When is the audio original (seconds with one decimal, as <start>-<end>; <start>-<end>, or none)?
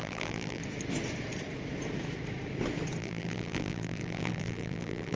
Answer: 0.6-3.0